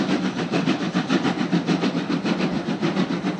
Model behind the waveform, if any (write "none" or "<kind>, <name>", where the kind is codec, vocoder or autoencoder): none